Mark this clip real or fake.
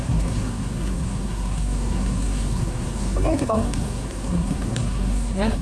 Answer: fake